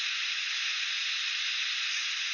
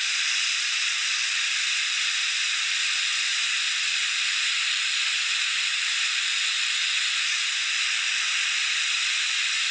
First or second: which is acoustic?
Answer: first